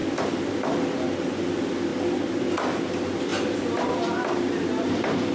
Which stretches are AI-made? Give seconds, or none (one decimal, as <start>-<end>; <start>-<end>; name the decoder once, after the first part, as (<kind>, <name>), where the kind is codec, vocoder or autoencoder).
3.3-5.3 (vocoder, BigVGAN v2)